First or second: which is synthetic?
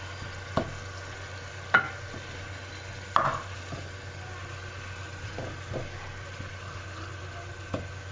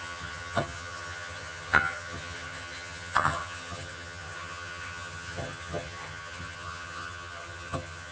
second